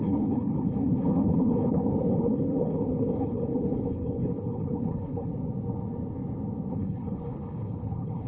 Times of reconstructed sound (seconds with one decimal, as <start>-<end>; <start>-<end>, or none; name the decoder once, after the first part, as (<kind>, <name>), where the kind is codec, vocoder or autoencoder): 0.0-5.3 (codec, HILCodec); 6.7-8.3